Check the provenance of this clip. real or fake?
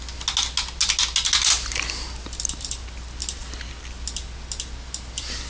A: real